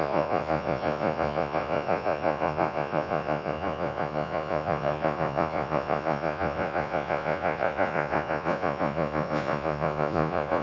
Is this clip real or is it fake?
fake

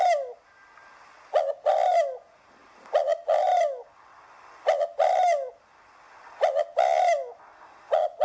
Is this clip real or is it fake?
real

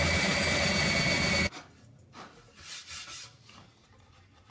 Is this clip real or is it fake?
real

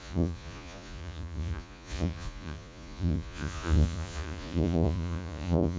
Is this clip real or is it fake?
fake